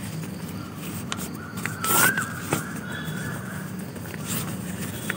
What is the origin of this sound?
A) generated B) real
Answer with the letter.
B